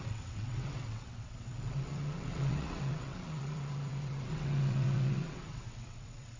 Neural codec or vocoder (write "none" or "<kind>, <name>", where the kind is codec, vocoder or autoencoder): vocoder, WaveNeXt